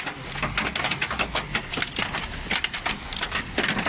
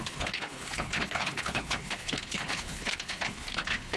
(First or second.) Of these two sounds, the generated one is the second